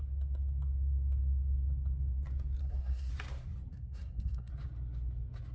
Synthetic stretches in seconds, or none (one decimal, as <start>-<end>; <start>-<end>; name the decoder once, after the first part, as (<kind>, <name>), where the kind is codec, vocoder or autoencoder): 2.6-3.1 (codec, SNAC); 3.7-4.5